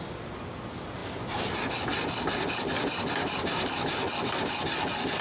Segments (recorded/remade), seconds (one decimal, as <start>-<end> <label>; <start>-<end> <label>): 0.0-5.2 recorded